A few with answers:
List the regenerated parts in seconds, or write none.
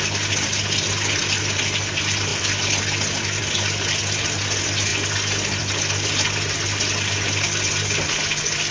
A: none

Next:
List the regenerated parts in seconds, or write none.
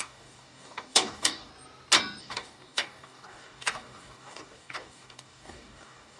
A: 0.0-1.5; 2.2-6.2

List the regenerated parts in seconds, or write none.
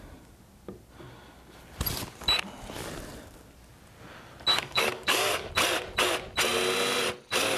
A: 4.5-5.5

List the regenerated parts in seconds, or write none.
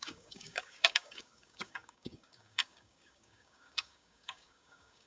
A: 0.0-5.1